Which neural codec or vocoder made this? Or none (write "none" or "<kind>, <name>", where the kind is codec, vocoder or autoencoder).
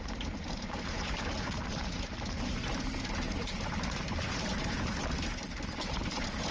vocoder, BigVGAN v2